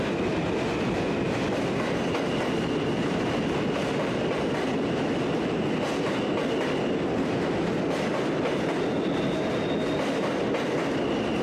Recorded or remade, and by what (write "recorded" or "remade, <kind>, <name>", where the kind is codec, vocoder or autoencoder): recorded